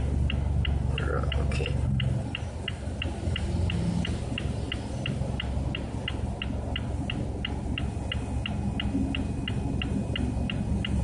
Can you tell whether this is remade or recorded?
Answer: recorded